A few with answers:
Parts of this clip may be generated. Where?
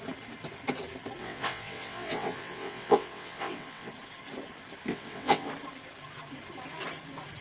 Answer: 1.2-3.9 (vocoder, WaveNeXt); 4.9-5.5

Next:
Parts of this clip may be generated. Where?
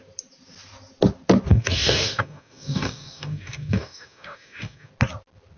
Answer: 1.5-4.9 (codec, DAC)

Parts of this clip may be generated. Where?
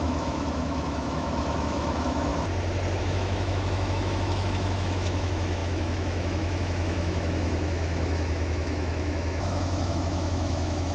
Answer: 0.0-2.3 (autoencoder, DAC-VAE); 3.0-10.9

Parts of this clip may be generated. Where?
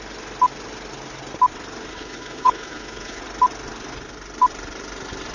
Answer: 1.9-3.2 (codec, HILCodec)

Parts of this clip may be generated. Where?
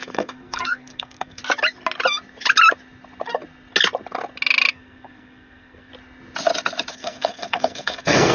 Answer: 0.0-1.4 (codec, SNAC); 4.7-5.9; 6.9-8.3